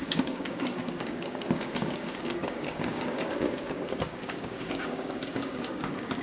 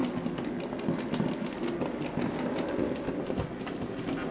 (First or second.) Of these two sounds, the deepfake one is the first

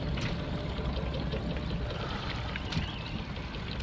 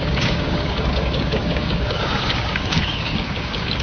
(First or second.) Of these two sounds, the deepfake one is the second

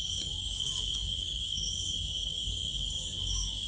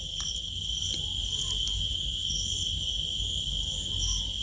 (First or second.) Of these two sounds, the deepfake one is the first